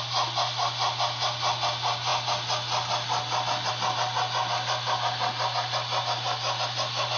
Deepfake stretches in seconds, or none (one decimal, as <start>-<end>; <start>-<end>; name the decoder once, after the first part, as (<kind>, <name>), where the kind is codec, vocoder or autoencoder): none